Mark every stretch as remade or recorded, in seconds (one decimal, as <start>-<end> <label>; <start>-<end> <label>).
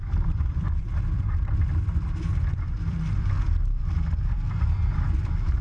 0.0-5.6 remade